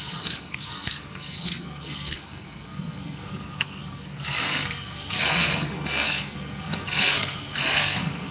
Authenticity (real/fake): fake